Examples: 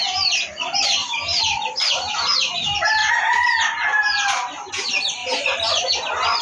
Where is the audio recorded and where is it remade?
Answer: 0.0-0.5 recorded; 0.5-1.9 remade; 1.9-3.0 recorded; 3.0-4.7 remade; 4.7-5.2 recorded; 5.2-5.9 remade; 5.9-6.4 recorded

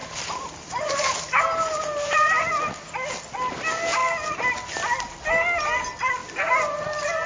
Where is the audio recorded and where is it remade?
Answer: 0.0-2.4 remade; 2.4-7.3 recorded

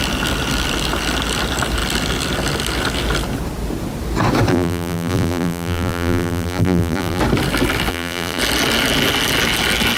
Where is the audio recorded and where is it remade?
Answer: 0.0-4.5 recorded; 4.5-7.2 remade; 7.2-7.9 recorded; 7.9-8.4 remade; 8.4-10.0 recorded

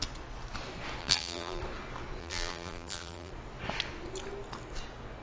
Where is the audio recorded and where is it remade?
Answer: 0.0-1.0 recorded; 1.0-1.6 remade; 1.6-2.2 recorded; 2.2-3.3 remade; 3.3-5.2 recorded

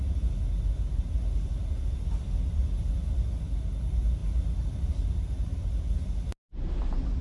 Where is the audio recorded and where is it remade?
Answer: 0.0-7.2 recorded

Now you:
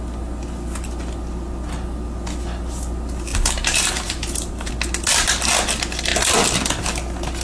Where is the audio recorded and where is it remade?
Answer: 0.0-3.3 recorded; 3.3-4.7 remade; 4.7-7.4 recorded

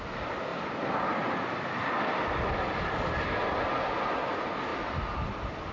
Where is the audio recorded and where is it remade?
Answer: 0.0-0.5 recorded; 0.5-3.9 remade; 3.9-4.7 recorded; 4.7-5.7 remade